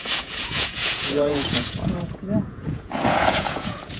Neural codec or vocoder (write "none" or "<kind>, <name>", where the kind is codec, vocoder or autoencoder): vocoder, Vocos